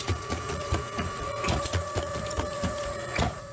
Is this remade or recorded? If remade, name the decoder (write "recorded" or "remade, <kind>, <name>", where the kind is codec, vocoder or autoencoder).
remade, vocoder, Vocos